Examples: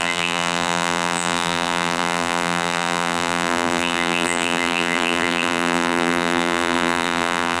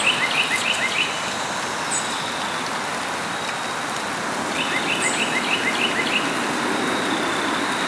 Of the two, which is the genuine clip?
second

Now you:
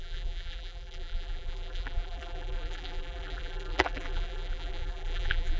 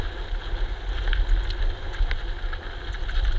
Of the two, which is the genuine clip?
second